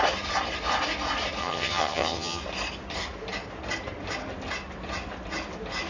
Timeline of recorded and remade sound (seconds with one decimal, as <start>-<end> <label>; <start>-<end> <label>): 0.0-1.4 recorded; 1.4-2.4 remade; 2.4-5.9 recorded